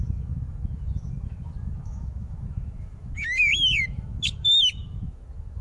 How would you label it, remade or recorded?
remade